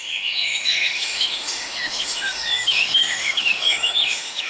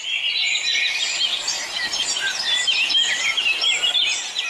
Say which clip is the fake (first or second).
first